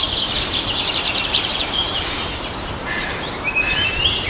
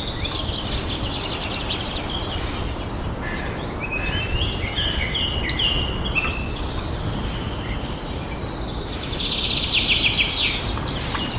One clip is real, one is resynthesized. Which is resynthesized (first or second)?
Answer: first